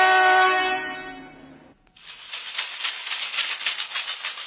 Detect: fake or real real